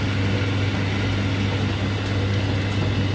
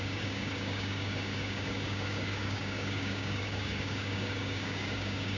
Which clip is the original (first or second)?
first